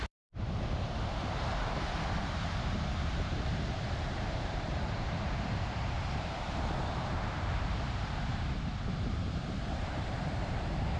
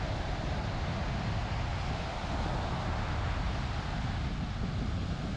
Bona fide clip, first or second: second